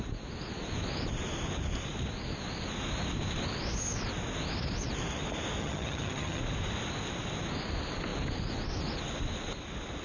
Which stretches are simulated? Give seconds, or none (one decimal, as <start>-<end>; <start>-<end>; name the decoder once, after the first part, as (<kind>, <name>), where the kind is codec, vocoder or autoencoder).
5.6-6.4 (vocoder, HiFi-GAN)